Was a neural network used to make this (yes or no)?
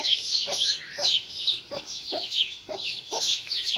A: yes